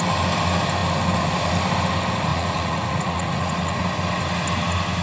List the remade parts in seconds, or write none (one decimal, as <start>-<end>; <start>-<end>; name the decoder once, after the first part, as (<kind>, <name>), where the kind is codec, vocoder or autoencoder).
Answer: 2.3-3.8 (vocoder, Vocos)